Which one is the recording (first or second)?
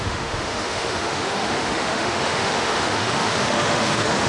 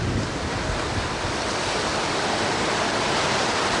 second